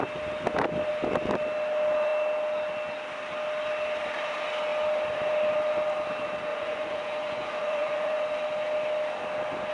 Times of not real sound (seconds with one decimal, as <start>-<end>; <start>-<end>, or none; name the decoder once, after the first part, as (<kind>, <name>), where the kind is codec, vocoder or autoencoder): 6.5-8.2 (vocoder, Vocos)